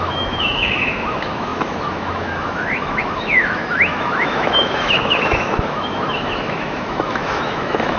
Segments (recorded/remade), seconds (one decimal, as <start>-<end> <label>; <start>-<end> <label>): 0.0-8.0 remade